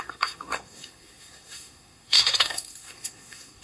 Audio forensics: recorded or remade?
remade